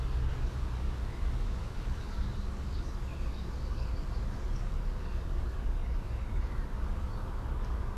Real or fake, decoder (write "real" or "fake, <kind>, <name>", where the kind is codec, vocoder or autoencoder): fake, codec, DAC